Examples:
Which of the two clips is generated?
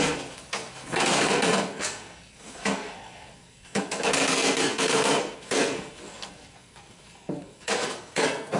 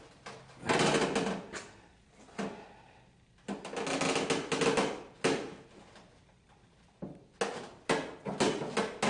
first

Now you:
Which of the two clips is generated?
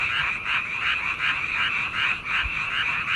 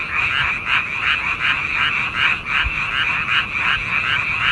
first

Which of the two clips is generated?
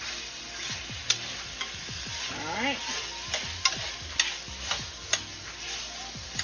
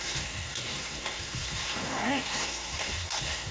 second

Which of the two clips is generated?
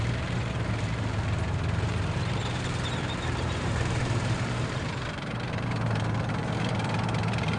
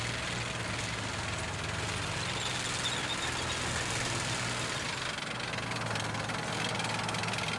first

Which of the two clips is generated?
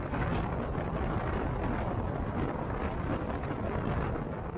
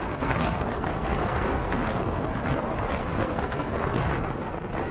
second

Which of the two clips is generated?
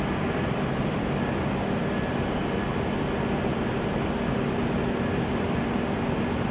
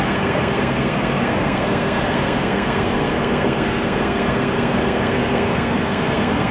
second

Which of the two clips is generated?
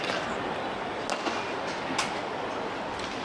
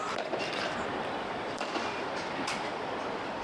second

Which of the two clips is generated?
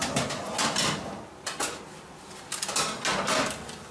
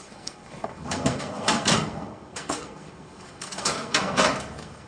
second